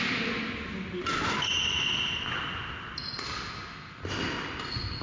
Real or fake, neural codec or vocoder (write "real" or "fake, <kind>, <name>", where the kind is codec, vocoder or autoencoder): real